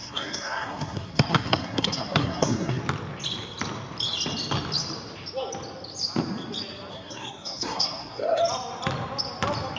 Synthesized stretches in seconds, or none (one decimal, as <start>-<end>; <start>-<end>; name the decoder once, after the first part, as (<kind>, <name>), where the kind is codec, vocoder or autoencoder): 0.0-2.8 (codec, SNAC); 6.9-8.4